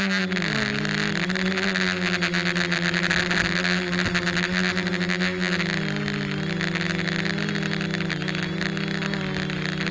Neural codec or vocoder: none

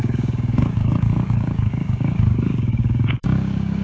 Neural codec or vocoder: codec, DAC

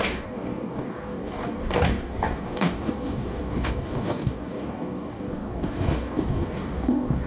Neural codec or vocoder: codec, DAC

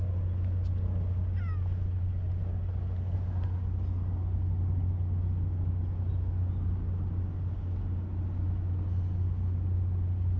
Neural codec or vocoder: none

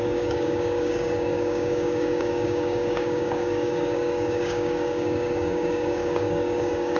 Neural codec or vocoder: codec, DAC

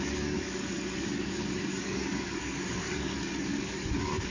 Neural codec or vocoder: codec, DAC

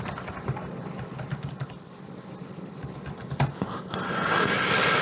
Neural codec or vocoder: none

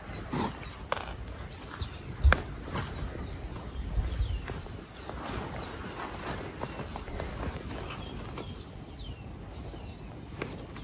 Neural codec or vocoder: none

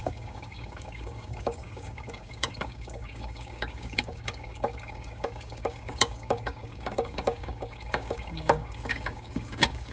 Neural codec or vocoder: codec, DAC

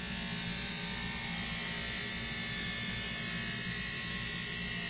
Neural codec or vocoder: none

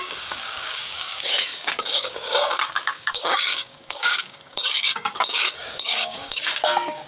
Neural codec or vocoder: codec, DAC